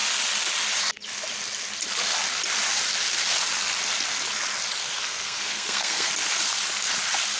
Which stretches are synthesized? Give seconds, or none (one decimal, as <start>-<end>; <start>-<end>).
4.8-6.1

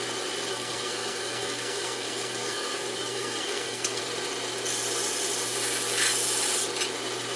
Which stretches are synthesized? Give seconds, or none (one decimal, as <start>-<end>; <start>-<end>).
0.5-4.0

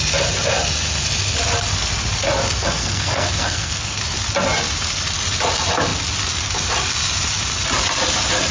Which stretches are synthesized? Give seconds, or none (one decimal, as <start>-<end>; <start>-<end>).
2.8-4.0

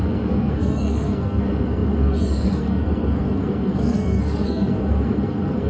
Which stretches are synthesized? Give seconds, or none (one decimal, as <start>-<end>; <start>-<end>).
0.0-5.7